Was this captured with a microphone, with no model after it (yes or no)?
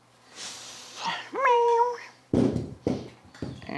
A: no